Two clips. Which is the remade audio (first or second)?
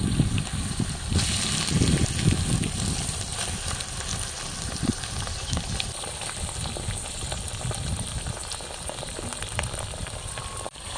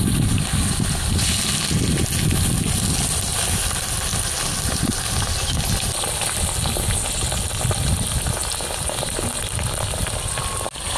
first